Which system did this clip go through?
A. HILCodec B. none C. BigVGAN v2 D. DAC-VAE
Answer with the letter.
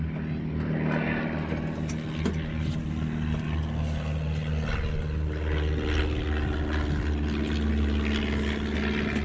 B